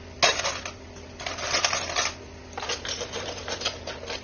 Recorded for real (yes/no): yes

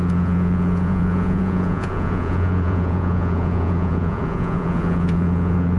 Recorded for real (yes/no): no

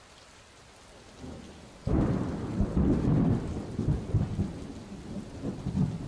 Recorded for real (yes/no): yes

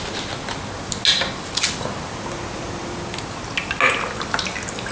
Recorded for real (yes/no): yes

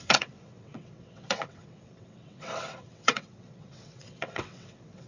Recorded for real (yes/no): no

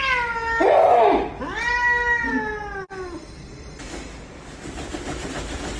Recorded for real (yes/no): yes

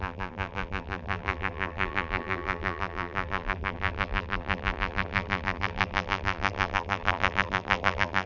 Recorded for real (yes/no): no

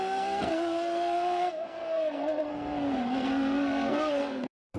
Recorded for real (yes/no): no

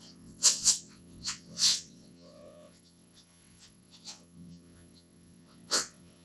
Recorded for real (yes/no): no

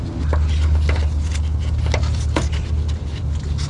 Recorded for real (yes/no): yes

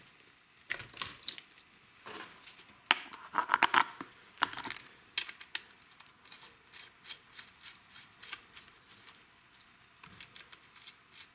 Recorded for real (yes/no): yes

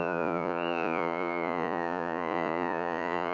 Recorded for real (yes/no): no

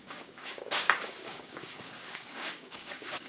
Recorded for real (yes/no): no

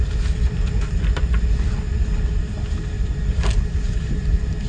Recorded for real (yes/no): yes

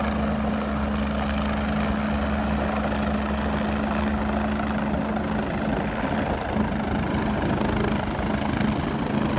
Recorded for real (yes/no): yes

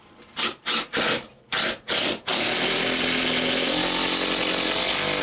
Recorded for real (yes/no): yes